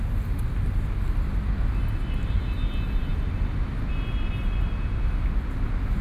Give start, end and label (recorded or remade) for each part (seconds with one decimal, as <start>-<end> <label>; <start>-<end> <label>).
0.0-6.0 recorded